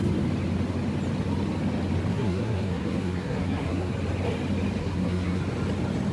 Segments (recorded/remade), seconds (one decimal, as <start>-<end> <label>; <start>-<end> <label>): 0.0-2.1 recorded; 2.1-3.9 remade; 3.9-4.8 recorded; 4.8-5.4 remade; 5.4-6.1 recorded